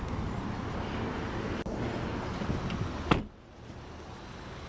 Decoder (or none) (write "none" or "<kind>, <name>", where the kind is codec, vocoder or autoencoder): none